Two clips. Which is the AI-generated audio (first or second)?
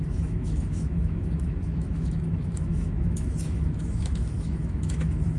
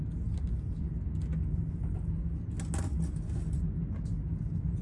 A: first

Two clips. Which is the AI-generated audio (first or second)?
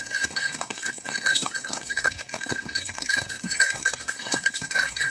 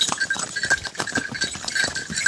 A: first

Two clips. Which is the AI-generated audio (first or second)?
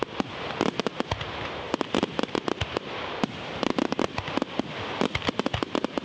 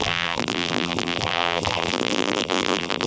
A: second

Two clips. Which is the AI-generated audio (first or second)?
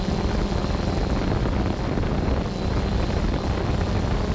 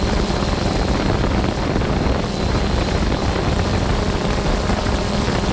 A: second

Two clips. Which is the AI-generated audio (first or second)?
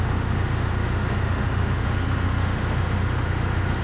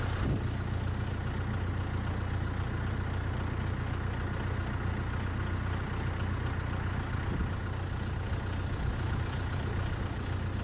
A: first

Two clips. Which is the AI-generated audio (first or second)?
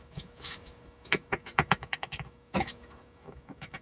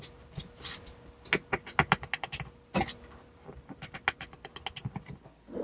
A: first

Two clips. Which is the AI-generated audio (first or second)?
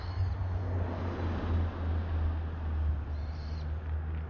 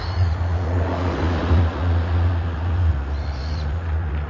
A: second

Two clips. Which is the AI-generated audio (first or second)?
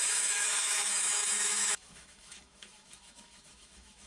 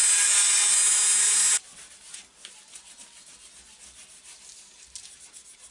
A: first